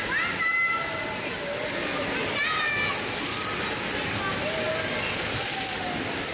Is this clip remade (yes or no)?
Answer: no